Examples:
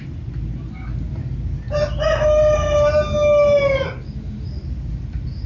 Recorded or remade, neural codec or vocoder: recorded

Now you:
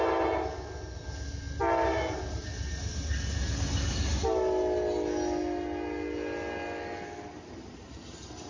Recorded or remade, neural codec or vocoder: recorded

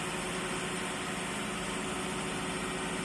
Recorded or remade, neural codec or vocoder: recorded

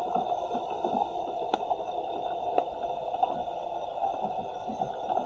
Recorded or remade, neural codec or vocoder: recorded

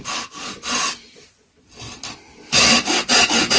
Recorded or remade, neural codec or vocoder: recorded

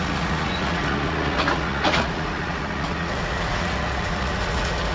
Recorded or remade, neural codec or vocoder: remade, vocoder, Vocos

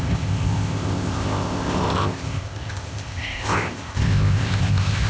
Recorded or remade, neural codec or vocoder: remade, codec, ZipCodec